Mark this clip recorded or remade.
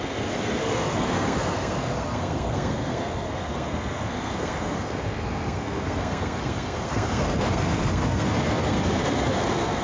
remade